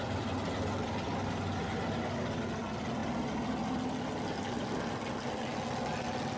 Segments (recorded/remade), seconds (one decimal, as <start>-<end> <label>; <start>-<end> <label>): 0.0-6.4 recorded